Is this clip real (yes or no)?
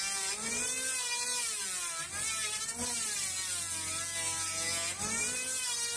yes